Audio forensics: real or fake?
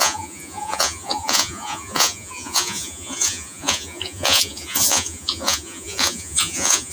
fake